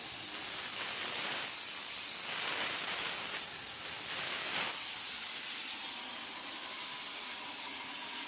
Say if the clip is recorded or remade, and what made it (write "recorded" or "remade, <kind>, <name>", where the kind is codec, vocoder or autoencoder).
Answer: recorded